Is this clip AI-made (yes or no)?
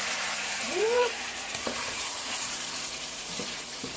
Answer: yes